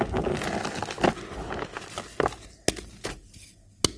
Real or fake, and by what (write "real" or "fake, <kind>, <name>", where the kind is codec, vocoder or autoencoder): real